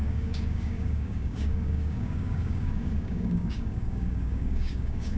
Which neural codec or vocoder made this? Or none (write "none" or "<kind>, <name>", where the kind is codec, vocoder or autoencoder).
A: codec, DAC